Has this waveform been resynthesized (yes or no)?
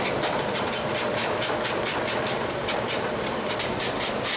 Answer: yes